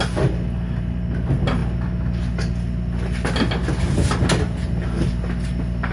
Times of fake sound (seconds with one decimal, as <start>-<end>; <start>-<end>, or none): none